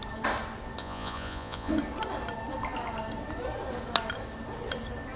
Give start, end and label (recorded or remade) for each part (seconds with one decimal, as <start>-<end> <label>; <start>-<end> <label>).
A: 0.0-0.8 recorded; 0.8-1.7 remade; 1.7-5.2 recorded